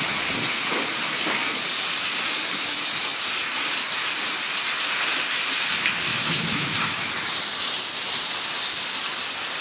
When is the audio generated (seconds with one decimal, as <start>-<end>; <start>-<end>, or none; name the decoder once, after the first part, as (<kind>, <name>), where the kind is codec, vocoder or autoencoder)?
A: 6.1-7.1 (autoencoder, DAC-VAE)